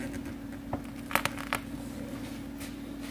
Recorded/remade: recorded